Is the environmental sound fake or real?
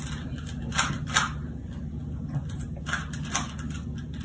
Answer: real